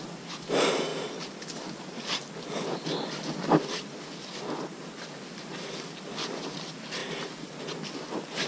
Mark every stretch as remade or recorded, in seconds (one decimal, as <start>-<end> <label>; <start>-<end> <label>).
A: 0.0-8.5 recorded